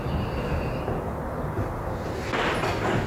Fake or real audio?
real